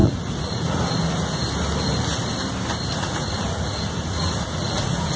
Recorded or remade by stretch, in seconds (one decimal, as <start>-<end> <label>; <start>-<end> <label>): 0.0-0.8 remade; 0.8-2.9 recorded; 2.9-5.2 remade